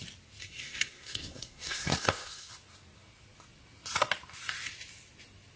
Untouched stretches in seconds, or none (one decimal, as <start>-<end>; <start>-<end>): 0.0-0.4; 2.5-5.6